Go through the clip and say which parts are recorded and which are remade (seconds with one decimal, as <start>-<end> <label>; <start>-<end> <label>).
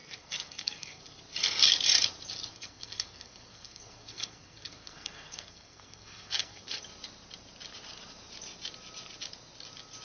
0.0-1.0 remade; 1.0-2.5 recorded; 2.5-6.8 remade; 6.8-10.0 recorded